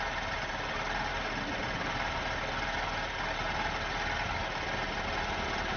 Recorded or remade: recorded